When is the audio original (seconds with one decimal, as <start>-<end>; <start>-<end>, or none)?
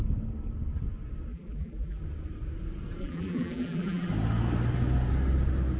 0.0-1.3; 2.0-3.0; 4.1-5.8